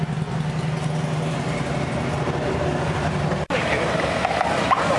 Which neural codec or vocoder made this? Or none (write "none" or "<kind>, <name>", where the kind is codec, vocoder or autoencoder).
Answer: none